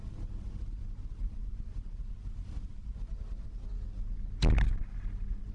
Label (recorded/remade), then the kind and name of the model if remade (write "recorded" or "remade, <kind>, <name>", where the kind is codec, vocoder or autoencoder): recorded